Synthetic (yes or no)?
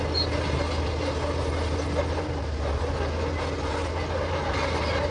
no